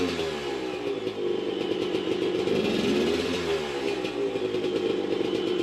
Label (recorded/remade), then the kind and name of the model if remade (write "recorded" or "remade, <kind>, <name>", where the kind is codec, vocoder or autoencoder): recorded